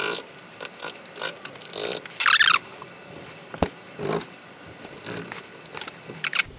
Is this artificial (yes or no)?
no